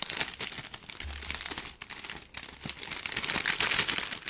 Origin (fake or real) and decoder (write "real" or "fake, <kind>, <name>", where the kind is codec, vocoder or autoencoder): real